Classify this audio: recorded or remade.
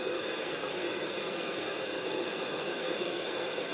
remade